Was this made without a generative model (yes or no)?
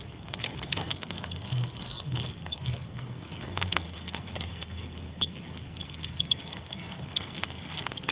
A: no